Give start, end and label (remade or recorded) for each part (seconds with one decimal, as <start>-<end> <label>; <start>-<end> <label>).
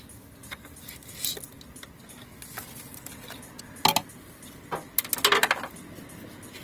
0.0-0.4 recorded; 0.4-1.0 remade; 1.0-6.6 recorded